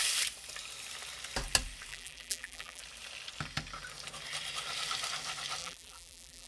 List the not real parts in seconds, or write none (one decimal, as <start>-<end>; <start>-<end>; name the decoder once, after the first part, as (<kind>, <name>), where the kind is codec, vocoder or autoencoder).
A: 1.9-2.8 (vocoder, BigVGAN v2); 5.6-6.5